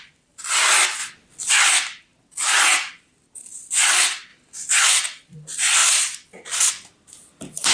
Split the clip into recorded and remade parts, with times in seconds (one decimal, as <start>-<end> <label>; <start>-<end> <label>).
0.0-1.0 remade; 1.0-1.5 recorded; 1.5-2.1 remade; 2.1-2.9 recorded; 2.9-7.7 remade